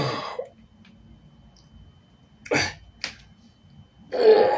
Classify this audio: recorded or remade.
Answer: recorded